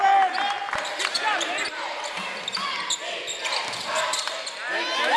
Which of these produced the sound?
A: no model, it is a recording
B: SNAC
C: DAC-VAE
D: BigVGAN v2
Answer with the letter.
A